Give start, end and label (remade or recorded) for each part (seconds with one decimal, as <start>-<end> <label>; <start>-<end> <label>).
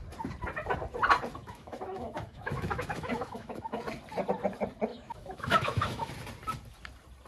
0.0-1.4 recorded; 1.4-3.8 remade; 3.8-4.9 recorded; 4.9-6.1 remade; 6.1-7.3 recorded